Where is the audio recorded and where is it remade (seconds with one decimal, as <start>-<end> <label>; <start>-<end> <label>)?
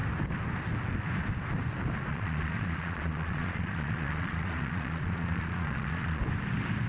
0.0-2.1 recorded; 2.1-6.2 remade; 6.2-6.9 recorded